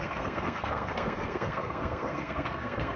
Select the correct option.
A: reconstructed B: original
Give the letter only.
A